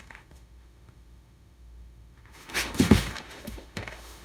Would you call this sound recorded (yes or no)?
no